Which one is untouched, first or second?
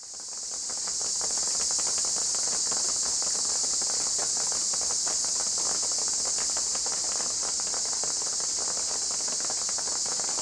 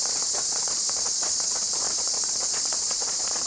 first